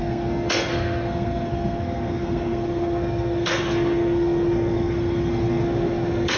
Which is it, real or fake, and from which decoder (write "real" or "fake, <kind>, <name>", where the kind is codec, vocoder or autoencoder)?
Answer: fake, codec, SNAC